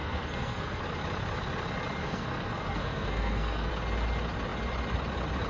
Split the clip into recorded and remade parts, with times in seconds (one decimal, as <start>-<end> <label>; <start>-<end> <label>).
0.0-0.8 remade; 0.8-2.0 recorded; 2.0-3.7 remade; 3.7-5.5 recorded